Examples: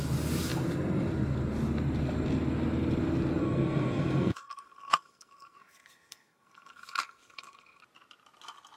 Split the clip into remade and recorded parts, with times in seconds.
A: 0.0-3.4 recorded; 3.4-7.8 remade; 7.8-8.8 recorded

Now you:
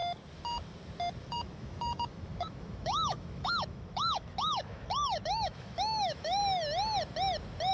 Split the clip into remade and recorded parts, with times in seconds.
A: 0.0-1.2 recorded; 1.2-6.4 remade; 6.4-7.7 recorded

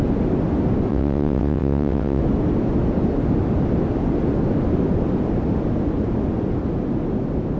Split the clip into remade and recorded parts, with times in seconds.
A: 0.0-0.9 recorded; 0.9-2.2 remade; 2.2-7.6 recorded